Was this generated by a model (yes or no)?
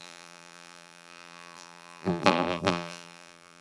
yes